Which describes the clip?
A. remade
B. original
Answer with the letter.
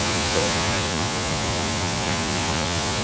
A